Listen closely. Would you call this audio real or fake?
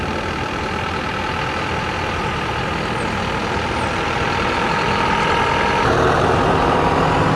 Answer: real